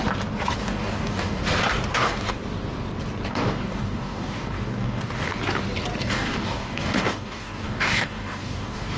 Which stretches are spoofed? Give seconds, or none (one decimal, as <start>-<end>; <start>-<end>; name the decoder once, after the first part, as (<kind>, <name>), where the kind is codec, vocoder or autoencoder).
0.6-1.4 (codec, DAC); 1.9-2.4; 3.3-5.3; 6.0-9.0